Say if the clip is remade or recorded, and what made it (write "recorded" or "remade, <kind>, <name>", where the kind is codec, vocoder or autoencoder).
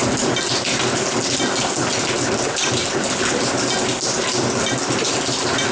recorded